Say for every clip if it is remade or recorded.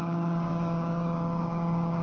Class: remade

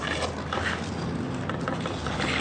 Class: recorded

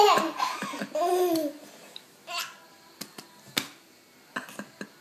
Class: recorded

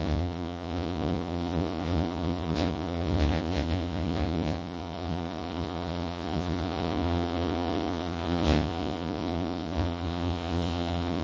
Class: remade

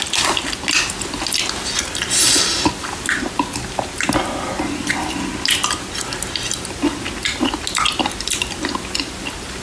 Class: recorded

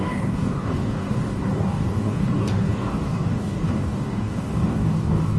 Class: remade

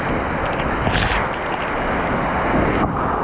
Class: recorded